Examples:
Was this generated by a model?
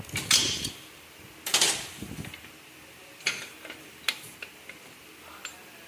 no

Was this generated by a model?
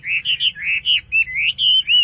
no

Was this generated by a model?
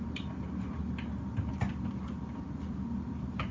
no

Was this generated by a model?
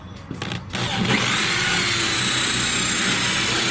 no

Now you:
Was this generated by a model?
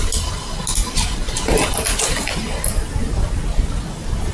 no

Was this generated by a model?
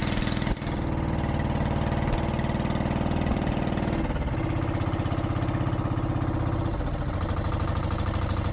no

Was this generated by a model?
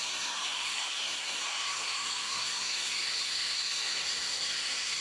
yes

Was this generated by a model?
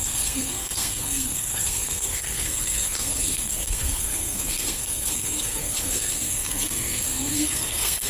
yes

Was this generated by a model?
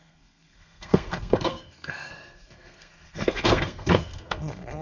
yes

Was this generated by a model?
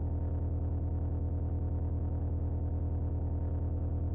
no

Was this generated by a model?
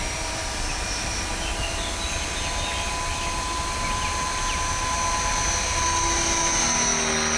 no